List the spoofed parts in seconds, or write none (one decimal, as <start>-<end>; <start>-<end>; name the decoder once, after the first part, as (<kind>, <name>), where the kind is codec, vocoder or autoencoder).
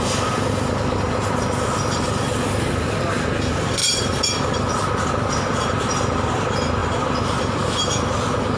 none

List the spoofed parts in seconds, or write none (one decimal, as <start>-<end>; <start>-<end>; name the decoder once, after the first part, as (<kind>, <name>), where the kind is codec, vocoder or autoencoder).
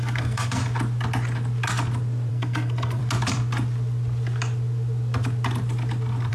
0.0-0.6 (codec, SNAC); 2.3-3.0